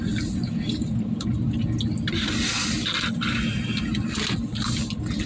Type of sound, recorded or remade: recorded